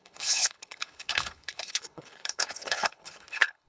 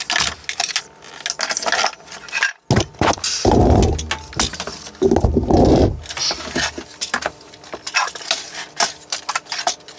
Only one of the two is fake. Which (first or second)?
first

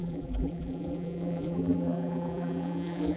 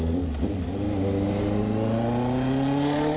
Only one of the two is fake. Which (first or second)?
first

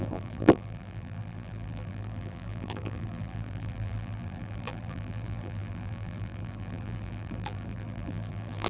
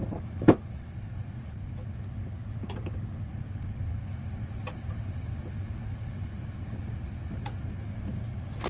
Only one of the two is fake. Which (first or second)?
first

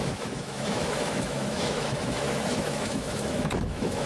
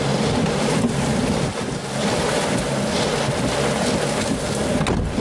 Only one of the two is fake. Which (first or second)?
first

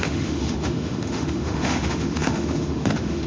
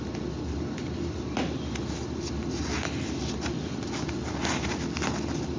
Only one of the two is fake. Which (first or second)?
first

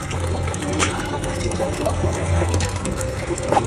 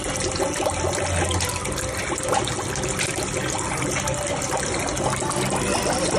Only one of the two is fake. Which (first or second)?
first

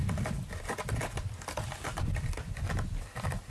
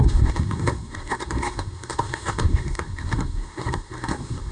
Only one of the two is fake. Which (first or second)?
second